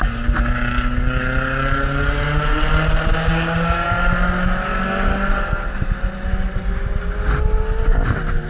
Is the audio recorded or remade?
recorded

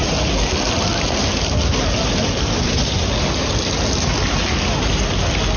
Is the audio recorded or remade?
recorded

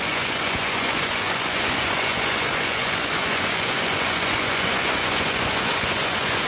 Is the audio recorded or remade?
remade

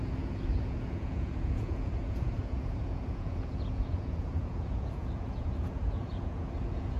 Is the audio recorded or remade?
remade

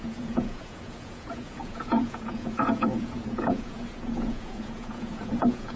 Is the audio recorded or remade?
remade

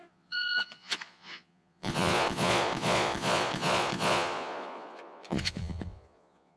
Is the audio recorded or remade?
remade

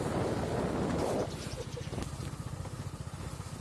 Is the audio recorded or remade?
recorded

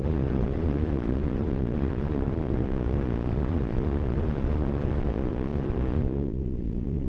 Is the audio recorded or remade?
remade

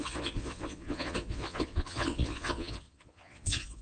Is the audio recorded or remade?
remade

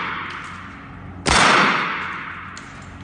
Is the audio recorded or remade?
recorded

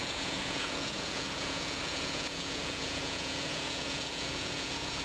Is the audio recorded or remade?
remade